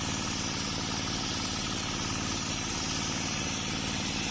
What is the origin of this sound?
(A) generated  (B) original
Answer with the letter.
B